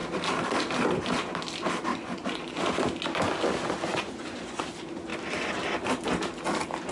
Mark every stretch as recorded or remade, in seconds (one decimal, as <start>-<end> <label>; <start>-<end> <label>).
0.0-1.9 recorded; 1.9-2.6 remade; 2.6-3.9 recorded; 3.9-4.6 remade; 4.6-6.9 recorded